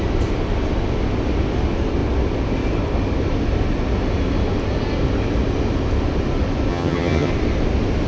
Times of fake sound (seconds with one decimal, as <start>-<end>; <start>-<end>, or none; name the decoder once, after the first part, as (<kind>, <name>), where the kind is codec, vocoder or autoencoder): 6.7-7.3 (vocoder, HiFi-GAN)